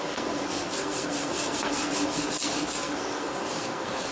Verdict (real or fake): fake